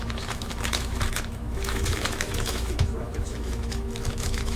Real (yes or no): no